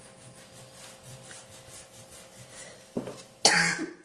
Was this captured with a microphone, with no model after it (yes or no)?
yes